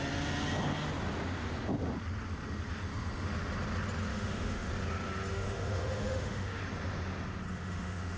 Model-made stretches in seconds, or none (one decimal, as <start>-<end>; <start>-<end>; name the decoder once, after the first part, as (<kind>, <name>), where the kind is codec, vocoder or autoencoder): 4.1-4.7 (autoencoder, DAC-VAE); 5.3-6.6; 7.5-8.2